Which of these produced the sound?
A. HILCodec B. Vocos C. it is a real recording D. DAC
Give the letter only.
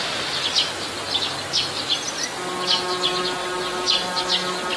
C